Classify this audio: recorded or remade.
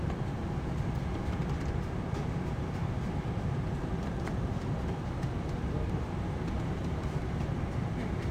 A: remade